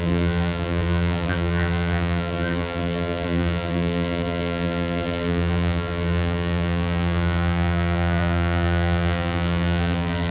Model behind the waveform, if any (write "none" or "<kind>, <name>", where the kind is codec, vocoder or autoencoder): vocoder, BigVGAN v2